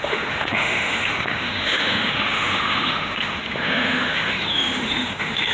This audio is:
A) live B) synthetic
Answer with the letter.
B